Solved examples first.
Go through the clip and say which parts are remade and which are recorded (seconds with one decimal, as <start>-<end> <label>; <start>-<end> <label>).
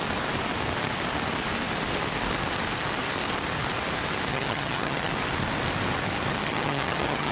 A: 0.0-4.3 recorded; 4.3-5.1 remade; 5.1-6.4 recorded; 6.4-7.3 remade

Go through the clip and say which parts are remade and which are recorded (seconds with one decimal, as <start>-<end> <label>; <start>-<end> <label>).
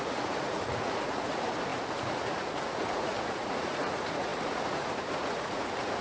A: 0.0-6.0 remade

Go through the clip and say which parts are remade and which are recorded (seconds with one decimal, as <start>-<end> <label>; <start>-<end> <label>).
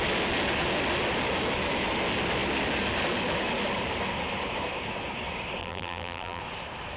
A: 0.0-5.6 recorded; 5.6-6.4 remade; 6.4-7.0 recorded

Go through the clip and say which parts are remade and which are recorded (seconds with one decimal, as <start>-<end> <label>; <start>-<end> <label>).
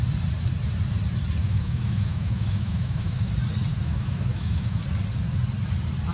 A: 0.0-1.4 recorded; 1.4-3.3 remade; 3.3-3.7 recorded; 3.7-4.8 remade; 4.8-6.1 recorded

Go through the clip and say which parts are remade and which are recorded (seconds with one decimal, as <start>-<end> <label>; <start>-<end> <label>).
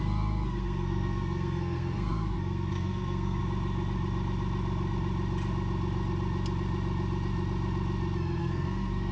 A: 0.0-3.4 remade; 3.4-8.4 recorded; 8.4-9.1 remade